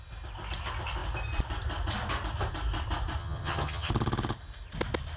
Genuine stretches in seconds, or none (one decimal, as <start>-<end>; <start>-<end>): 0.0-3.2; 3.9-5.2